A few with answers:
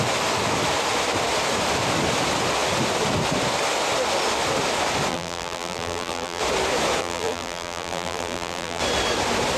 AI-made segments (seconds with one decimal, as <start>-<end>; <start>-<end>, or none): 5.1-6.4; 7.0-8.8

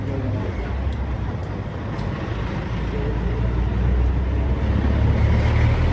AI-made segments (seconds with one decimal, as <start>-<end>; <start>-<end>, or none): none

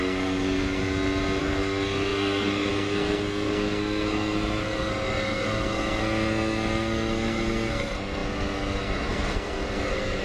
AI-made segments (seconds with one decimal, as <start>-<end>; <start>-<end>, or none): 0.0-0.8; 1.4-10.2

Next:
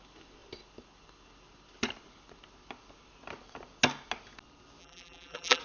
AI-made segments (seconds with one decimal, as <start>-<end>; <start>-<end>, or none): 4.8-5.6